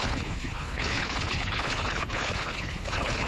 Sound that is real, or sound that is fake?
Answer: fake